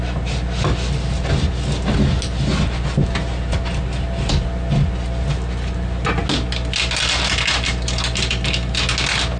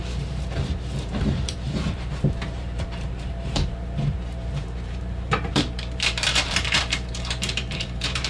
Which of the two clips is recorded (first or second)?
first